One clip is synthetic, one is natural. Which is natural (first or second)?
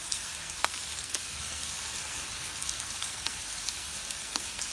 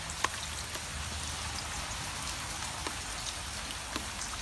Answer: second